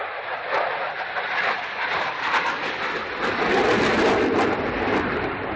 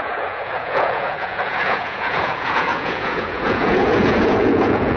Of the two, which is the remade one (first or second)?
second